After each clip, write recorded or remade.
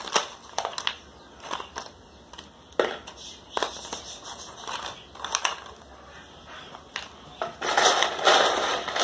recorded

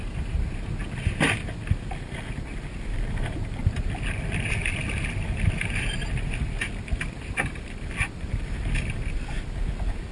recorded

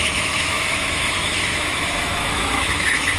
remade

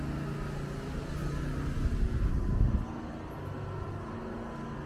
recorded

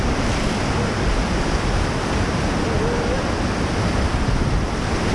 recorded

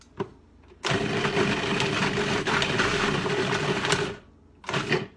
recorded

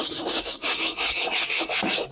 remade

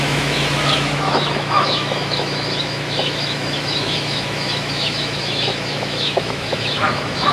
remade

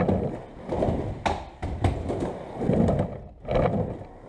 recorded